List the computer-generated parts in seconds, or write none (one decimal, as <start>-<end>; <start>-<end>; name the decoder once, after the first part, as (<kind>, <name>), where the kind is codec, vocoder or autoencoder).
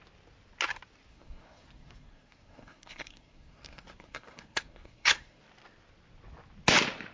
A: 1.1-5.4 (codec, SNAC)